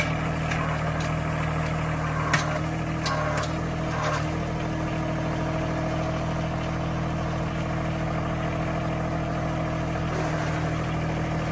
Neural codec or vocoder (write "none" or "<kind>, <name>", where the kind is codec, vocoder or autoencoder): none